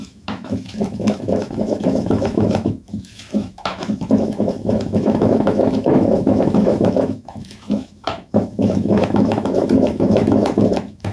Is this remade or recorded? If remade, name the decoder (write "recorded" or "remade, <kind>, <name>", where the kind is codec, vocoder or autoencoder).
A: remade, autoencoder, DAC-VAE